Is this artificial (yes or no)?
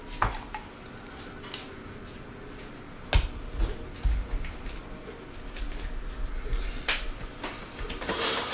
no